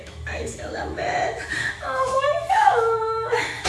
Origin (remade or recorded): remade